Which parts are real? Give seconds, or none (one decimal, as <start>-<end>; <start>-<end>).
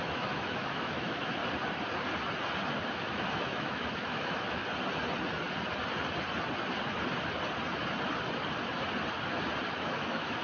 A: 1.4-2.7; 4.6-9.7